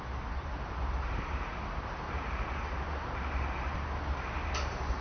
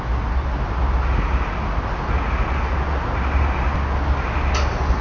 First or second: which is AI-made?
first